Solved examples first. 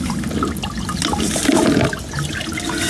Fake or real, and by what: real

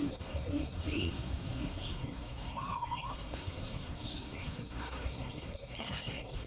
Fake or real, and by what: fake, codec, SNAC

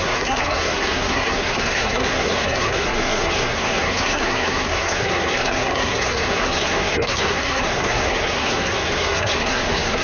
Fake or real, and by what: fake, codec, SNAC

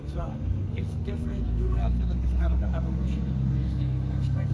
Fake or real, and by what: fake, codec, SNAC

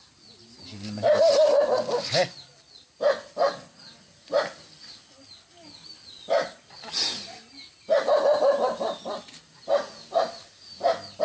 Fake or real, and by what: real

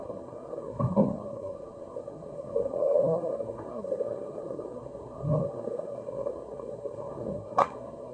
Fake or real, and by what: fake, codec, SNAC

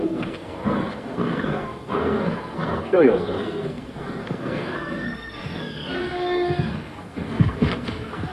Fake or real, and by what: fake, codec, SNAC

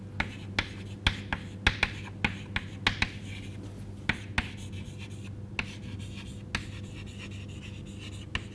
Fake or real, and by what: real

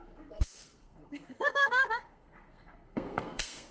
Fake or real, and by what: fake, codec, SNAC